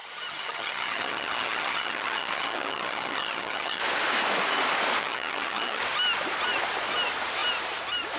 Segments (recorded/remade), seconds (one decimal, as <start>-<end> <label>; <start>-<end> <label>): 0.0-3.8 remade; 3.8-5.0 recorded; 5.0-5.8 remade; 5.8-8.2 recorded

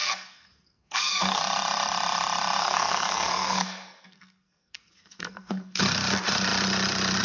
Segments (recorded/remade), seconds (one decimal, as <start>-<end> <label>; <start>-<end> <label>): 0.0-1.4 remade; 1.4-2.6 recorded; 2.6-5.8 remade; 5.8-7.2 recorded

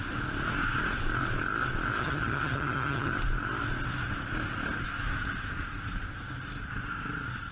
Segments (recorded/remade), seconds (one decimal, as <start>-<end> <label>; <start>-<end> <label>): 0.0-2.0 recorded; 2.0-3.1 remade; 3.1-7.5 recorded

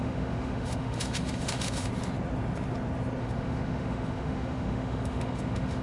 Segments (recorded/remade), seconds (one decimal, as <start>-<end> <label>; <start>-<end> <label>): 0.0-1.9 remade; 1.9-3.2 recorded; 3.2-5.8 remade

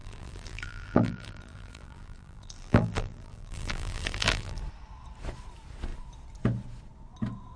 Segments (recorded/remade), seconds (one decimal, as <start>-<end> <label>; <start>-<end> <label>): 0.0-4.6 remade; 4.6-7.6 recorded

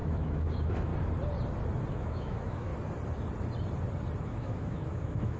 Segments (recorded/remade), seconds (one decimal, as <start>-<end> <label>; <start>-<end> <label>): 0.0-0.9 remade; 0.9-1.9 recorded; 1.9-2.7 remade; 2.7-4.2 recorded; 4.2-5.4 remade